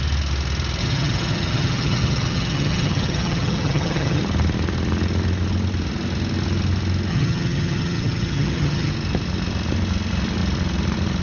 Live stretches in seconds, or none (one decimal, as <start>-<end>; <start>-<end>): 0.0-0.8; 4.2-7.1; 8.9-11.2